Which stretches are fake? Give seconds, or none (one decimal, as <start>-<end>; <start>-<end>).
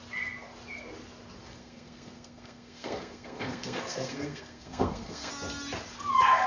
1.4-5.3